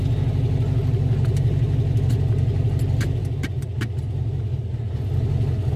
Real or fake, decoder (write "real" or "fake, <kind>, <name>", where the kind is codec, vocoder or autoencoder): real